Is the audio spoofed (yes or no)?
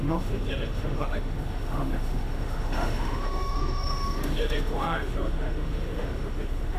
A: yes